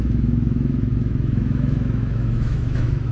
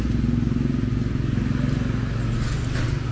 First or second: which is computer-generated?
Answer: first